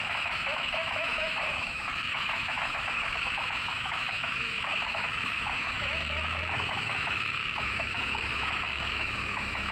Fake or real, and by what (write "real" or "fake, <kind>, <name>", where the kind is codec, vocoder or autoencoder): fake, autoencoder, DAC-VAE